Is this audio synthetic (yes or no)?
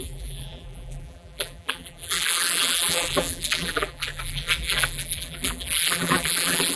yes